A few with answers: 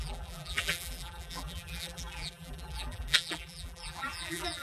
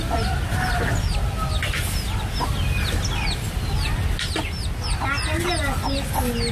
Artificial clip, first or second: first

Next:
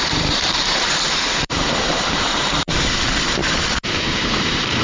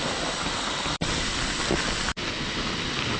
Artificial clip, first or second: first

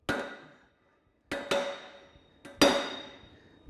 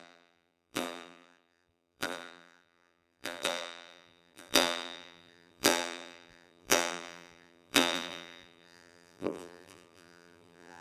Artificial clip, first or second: second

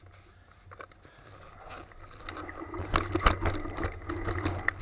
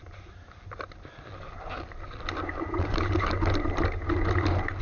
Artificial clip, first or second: second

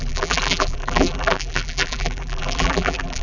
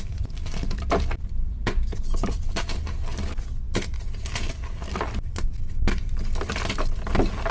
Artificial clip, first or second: first